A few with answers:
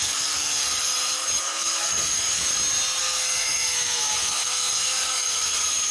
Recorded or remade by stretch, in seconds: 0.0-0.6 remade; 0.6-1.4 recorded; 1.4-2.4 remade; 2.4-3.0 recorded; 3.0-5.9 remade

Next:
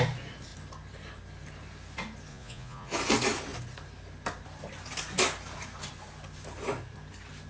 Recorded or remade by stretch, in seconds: 0.0-2.3 recorded; 2.3-2.9 remade; 2.9-7.5 recorded

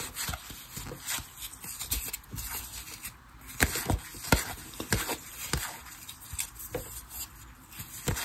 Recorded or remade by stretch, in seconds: 0.0-8.2 recorded

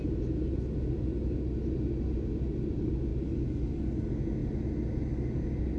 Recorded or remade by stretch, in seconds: 0.0-5.8 recorded